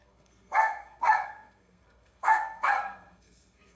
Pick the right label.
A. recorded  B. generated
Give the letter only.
B